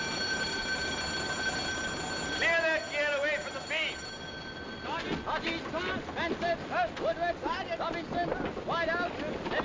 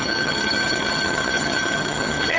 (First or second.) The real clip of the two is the first